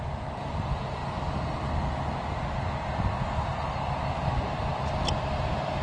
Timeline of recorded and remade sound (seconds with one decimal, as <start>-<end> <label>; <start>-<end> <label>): 0.0-5.8 recorded